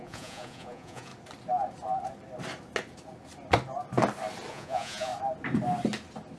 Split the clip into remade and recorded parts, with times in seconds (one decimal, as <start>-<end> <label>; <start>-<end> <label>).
0.0-1.1 remade; 1.1-4.5 recorded; 4.5-5.1 remade; 5.1-6.4 recorded